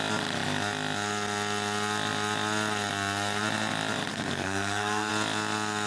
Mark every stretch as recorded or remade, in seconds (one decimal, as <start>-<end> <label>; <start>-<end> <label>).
0.0-4.1 recorded; 4.1-5.1 remade; 5.1-5.9 recorded